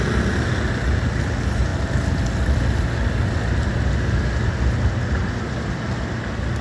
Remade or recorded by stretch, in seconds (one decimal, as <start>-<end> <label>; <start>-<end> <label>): 0.0-6.6 recorded